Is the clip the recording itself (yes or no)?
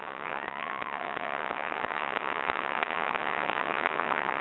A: no